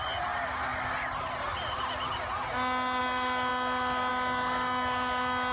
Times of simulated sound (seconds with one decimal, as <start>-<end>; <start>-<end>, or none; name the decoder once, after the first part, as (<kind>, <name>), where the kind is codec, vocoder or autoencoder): none